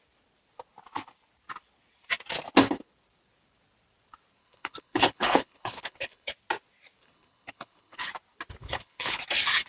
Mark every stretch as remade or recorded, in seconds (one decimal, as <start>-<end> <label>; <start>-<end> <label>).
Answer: 0.0-4.4 recorded; 4.4-6.3 remade; 6.3-7.0 recorded; 7.0-8.1 remade; 8.1-8.6 recorded; 8.6-9.2 remade; 9.2-9.7 recorded